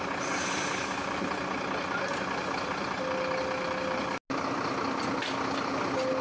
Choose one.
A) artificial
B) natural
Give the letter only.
B